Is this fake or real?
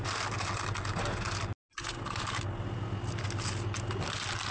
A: real